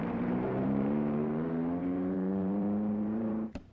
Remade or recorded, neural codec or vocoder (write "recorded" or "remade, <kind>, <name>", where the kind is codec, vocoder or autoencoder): remade, vocoder, BigVGAN v2